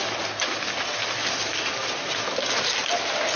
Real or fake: real